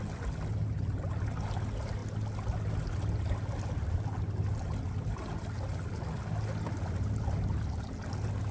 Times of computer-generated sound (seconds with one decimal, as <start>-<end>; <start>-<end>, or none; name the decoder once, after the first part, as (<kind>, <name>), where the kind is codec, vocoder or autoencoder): none